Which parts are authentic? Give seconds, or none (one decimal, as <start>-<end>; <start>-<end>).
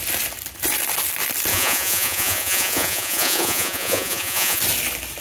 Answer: 0.0-1.5; 4.6-5.2